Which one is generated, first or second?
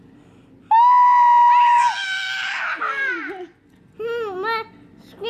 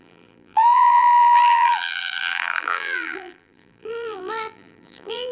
second